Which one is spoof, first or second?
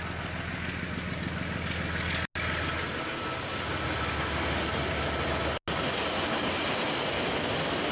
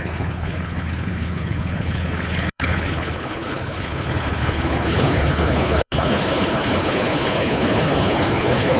second